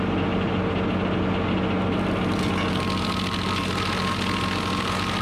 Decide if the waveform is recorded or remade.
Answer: recorded